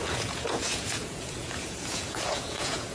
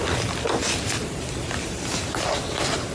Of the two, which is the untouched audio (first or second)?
second